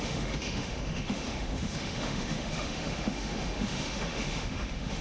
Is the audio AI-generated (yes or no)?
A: yes